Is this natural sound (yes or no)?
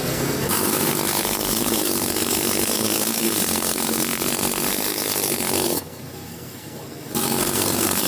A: no